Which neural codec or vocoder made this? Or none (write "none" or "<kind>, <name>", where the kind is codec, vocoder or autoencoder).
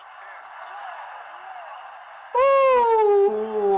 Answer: none